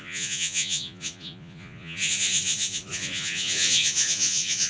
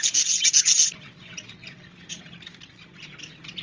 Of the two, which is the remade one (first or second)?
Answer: first